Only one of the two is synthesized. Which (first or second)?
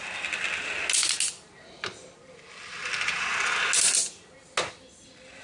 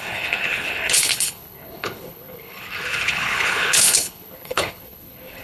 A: second